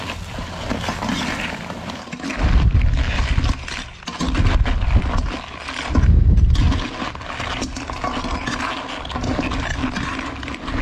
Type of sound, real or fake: real